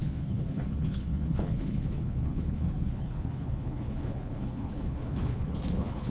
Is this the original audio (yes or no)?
no